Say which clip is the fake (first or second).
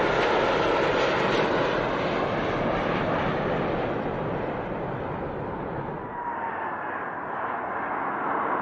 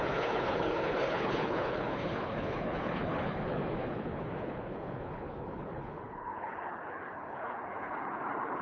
second